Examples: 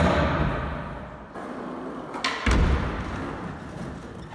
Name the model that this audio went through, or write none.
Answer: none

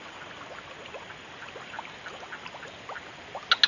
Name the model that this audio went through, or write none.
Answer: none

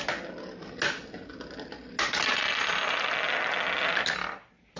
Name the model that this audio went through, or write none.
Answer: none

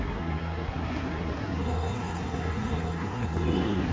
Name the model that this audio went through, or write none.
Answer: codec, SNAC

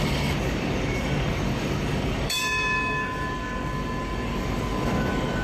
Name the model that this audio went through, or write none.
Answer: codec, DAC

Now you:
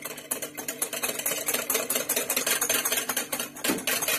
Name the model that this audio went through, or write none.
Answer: none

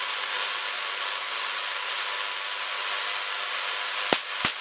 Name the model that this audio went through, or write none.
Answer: none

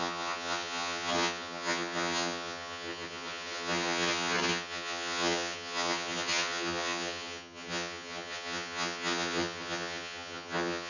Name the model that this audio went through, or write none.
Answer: vocoder, HiFi-GAN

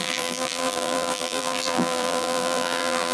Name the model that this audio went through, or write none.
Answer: vocoder, BigVGAN v2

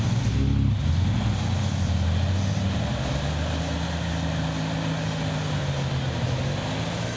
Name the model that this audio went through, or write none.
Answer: none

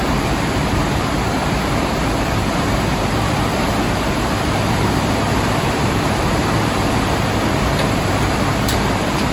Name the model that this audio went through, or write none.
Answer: vocoder, BigVGAN v2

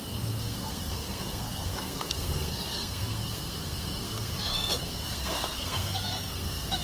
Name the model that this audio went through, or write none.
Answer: codec, SNAC